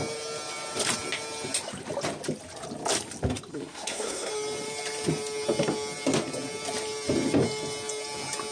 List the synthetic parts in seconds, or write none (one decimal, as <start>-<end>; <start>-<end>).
3.5-4.3